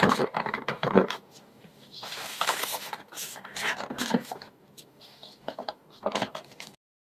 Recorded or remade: remade